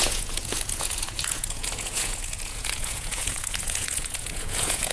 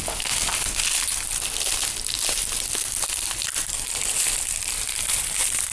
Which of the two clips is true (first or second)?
second